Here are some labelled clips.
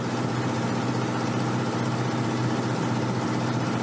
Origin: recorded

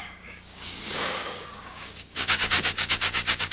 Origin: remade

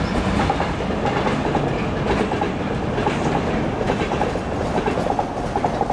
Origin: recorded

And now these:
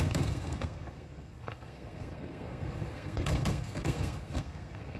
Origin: remade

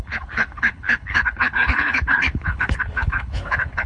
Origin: remade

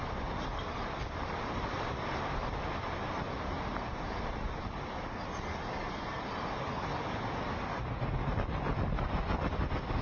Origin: recorded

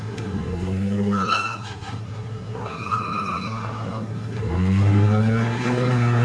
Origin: remade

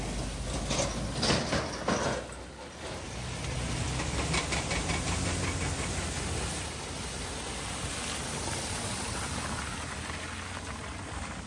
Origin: recorded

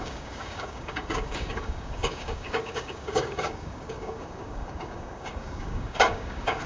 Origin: remade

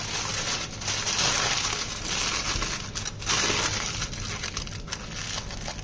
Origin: recorded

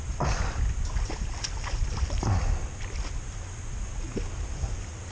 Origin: recorded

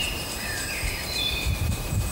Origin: remade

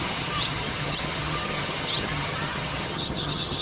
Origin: remade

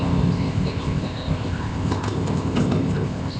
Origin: remade